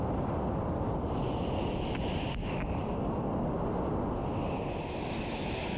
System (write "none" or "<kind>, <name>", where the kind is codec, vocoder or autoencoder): none